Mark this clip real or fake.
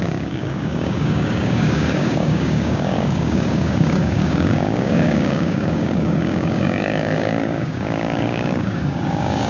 fake